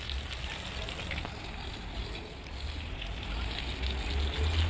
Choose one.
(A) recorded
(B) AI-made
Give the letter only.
A